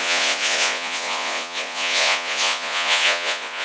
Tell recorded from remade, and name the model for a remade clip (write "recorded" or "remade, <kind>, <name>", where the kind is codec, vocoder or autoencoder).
remade, vocoder, Vocos